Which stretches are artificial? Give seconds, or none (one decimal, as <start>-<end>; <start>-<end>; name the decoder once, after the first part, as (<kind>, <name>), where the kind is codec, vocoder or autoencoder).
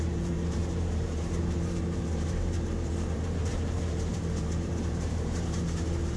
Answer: 0.0-6.2 (vocoder, BigVGAN v2)